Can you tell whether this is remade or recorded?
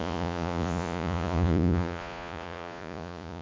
remade